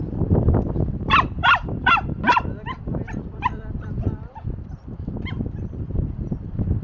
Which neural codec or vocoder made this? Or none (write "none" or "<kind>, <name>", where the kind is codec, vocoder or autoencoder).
none